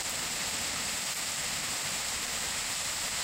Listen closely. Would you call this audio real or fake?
fake